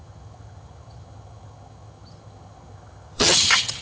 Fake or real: fake